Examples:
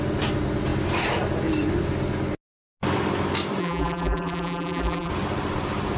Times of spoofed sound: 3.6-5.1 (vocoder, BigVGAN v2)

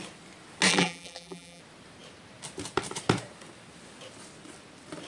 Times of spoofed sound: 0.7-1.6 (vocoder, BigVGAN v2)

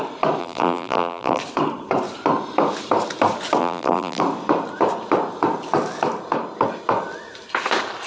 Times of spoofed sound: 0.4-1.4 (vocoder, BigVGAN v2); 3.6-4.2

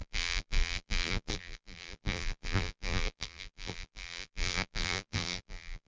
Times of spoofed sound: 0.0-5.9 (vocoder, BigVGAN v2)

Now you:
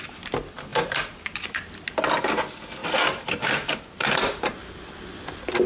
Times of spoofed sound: 0.7-1.4 (vocoder, BigVGAN v2); 2.8-4.7

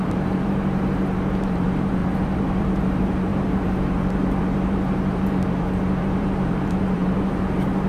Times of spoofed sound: 0.0-7.9 (vocoder, BigVGAN v2)

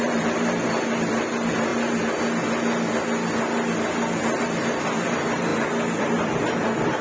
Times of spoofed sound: 0.0-1.7 (vocoder, BigVGAN v2); 4.4-5.5; 6.0-7.0

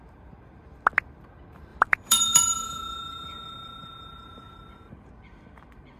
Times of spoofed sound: 1.7-5.1 (vocoder, BigVGAN v2)